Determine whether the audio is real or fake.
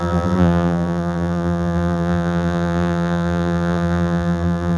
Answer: fake